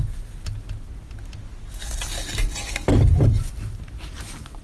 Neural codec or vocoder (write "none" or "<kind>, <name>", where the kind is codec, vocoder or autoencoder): none